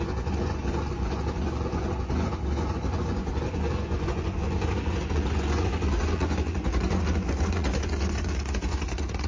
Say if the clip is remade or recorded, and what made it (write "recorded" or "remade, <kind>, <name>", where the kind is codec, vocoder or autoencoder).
remade, vocoder, Vocos